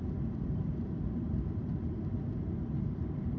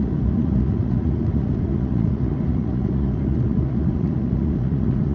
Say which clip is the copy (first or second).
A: second